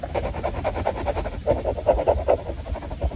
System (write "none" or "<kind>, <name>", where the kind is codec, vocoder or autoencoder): none